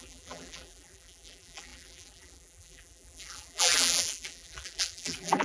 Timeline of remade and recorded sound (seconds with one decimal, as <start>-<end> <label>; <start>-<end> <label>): 0.0-5.4 remade